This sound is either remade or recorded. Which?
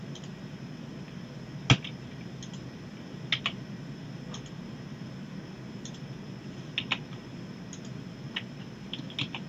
recorded